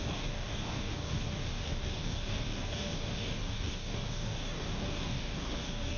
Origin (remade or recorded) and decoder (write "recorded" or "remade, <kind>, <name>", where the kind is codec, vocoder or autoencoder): remade, codec, DAC